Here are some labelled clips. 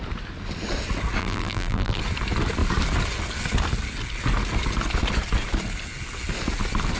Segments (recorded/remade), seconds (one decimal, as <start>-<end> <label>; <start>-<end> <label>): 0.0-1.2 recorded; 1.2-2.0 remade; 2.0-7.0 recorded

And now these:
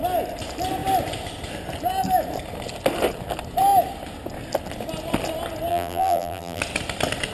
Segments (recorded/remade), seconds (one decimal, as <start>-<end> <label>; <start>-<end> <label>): 0.0-5.7 recorded; 5.7-6.6 remade; 6.6-7.3 recorded

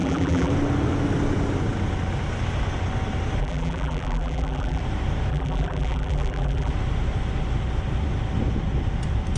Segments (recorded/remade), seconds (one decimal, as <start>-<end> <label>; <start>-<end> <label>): 0.0-0.5 remade; 0.5-3.4 recorded; 3.4-4.8 remade; 4.8-5.3 recorded; 5.3-6.7 remade; 6.7-9.4 recorded

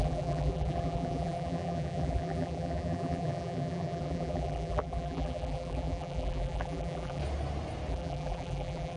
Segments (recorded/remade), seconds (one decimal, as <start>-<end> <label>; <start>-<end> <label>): 0.0-7.2 remade; 7.2-7.9 recorded; 7.9-9.0 remade

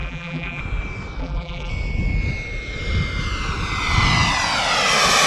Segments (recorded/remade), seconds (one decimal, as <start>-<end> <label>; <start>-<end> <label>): 0.0-0.6 remade; 0.6-1.2 recorded; 1.2-1.7 remade; 1.7-5.3 recorded